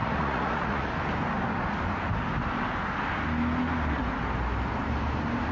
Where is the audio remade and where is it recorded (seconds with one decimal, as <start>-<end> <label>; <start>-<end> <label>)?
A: 0.0-0.9 remade; 0.9-5.5 recorded